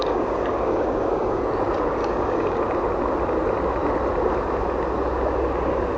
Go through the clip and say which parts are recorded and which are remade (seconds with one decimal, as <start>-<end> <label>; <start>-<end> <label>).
0.0-1.4 remade; 1.4-2.0 recorded; 2.0-2.6 remade; 2.6-6.0 recorded